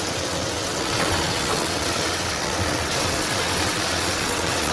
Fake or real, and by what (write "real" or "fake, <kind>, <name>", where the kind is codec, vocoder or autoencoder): fake, vocoder, WaveNeXt